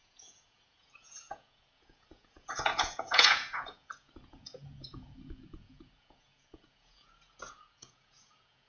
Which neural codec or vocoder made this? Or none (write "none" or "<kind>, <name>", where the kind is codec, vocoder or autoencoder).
vocoder, Vocos